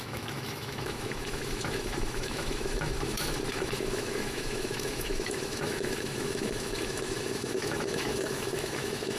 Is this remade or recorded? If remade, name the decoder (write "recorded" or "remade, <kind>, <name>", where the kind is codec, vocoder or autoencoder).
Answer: remade, autoencoder, DAC-VAE